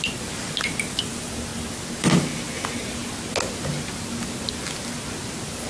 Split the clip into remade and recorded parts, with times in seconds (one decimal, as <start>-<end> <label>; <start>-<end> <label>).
0.0-5.7 recorded